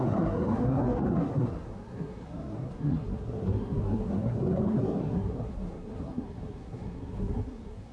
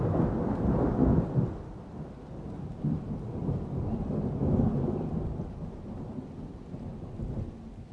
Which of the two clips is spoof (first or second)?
first